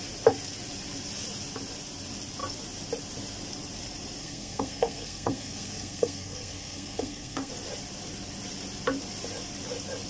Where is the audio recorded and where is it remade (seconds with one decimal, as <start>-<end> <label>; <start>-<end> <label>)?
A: 0.0-4.2 recorded; 4.2-7.5 remade; 7.5-10.1 recorded